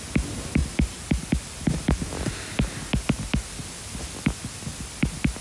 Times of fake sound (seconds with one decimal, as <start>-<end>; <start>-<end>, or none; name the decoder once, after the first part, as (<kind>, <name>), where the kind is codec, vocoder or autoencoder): none